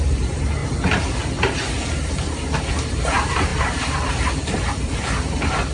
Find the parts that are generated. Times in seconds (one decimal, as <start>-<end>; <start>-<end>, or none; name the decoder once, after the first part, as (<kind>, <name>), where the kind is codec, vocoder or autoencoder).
0.0-0.6 (vocoder, BigVGAN v2); 2.7-5.7